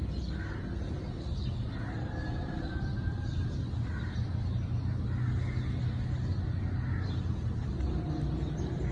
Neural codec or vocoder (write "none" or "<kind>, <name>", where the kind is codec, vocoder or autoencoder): none